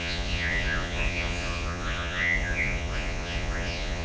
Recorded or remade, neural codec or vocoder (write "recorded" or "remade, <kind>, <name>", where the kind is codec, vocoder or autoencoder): remade, vocoder, Vocos